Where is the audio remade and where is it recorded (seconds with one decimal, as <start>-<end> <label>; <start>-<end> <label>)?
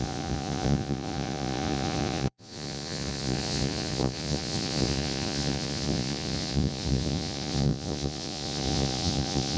0.0-9.6 remade